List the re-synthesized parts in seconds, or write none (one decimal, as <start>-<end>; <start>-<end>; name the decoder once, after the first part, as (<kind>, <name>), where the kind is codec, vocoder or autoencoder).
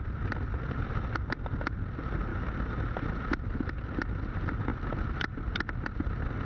none